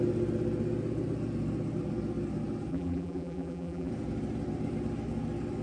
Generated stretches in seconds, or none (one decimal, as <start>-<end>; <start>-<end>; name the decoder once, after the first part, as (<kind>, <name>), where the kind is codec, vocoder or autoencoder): 2.7-3.9 (vocoder, BigVGAN v2)